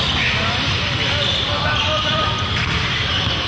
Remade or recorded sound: remade